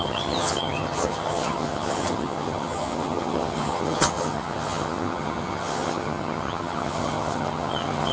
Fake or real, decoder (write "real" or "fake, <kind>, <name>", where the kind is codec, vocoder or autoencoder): fake, vocoder, HiFi-GAN